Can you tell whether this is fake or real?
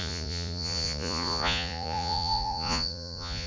fake